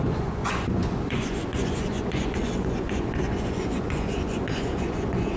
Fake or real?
fake